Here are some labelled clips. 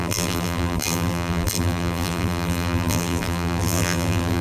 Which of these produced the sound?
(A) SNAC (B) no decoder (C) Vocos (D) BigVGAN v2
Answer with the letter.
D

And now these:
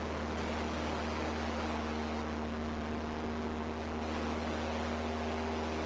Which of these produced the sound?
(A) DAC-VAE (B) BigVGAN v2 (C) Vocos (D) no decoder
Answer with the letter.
D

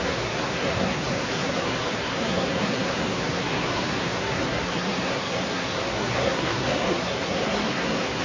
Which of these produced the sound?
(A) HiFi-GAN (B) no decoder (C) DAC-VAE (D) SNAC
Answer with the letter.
D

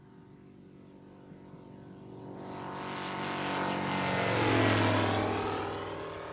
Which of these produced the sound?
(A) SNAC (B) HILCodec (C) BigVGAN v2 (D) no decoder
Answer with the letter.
D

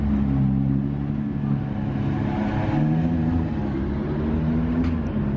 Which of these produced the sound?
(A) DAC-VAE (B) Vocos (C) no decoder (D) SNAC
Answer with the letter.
C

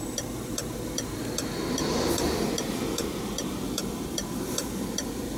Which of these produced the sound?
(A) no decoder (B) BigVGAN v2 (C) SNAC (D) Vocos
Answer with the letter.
B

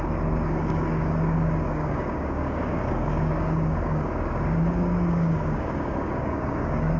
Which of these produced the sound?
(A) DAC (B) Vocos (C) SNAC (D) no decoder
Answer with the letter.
A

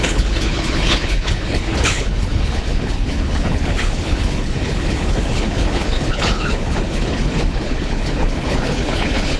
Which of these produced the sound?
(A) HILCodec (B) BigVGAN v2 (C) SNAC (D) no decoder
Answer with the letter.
A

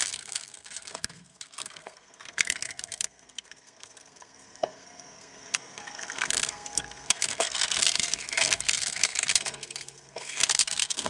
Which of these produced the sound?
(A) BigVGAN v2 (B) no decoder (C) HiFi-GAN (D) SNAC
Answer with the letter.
D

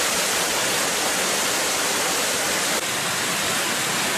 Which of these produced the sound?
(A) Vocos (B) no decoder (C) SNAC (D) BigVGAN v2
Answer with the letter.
D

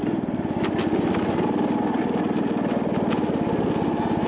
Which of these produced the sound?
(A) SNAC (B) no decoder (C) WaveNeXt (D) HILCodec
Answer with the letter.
B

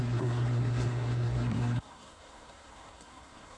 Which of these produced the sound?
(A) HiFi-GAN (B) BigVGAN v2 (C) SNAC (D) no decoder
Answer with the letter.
C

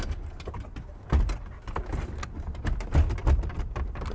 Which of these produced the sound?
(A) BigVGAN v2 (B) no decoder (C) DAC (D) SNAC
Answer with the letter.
B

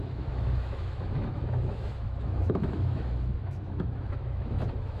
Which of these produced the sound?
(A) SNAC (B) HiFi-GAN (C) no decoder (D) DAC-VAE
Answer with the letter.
D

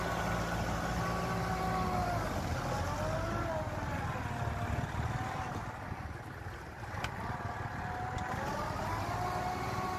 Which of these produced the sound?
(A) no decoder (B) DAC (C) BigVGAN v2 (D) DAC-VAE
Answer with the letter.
A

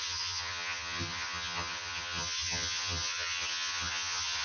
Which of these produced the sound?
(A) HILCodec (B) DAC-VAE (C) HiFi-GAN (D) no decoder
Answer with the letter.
C